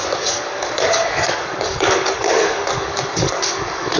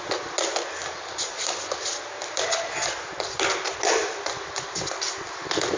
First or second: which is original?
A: second